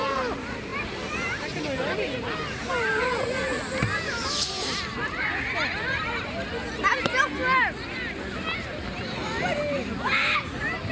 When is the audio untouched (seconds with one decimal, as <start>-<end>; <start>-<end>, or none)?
0.0-10.9